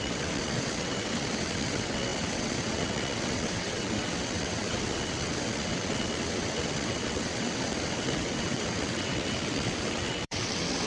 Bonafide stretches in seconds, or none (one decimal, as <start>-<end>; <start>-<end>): none